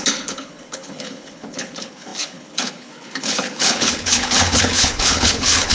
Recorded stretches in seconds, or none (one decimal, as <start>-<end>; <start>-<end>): none